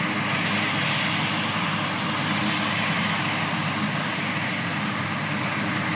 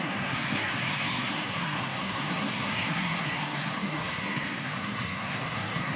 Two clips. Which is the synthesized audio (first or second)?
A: second